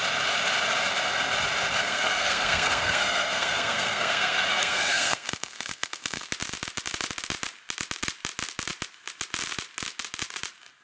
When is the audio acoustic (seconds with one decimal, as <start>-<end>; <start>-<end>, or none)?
0.0-1.8; 6.3-10.8